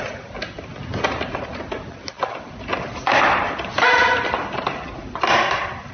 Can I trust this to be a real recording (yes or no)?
yes